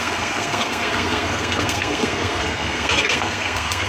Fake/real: fake